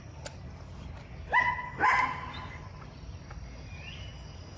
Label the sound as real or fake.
real